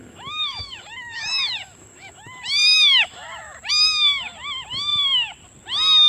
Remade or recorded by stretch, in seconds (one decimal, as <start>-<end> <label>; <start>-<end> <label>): 0.0-3.7 remade; 3.7-6.1 recorded

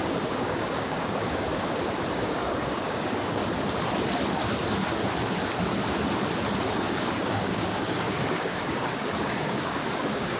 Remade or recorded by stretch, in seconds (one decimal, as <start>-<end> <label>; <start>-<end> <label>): 0.0-1.5 remade; 1.5-2.1 recorded; 2.1-3.4 remade; 3.4-6.6 recorded; 6.6-10.4 remade

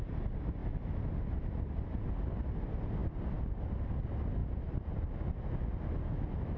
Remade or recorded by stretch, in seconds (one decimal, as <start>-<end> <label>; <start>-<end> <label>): 0.0-6.6 recorded

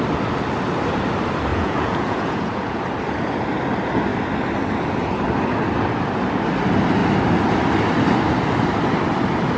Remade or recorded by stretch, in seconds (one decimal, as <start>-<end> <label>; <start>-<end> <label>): 0.0-1.5 recorded; 1.5-2.8 remade; 2.8-9.6 recorded

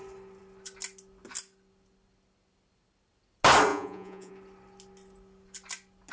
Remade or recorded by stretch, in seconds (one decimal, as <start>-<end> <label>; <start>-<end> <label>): 0.0-3.7 recorded; 3.7-4.3 remade; 4.3-6.1 recorded